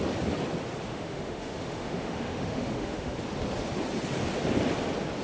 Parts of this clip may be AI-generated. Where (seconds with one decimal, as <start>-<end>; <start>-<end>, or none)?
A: 0.9-3.2